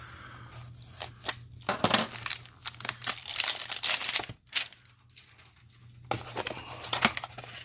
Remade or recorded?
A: recorded